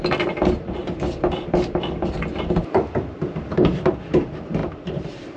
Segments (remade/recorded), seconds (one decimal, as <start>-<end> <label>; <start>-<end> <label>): 0.0-0.8 remade; 0.8-4.0 recorded; 4.0-5.4 remade